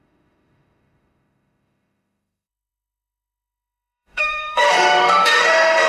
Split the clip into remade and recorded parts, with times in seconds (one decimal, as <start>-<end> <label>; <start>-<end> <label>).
0.0-5.9 remade